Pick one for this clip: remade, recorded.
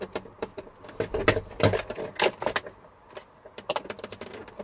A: recorded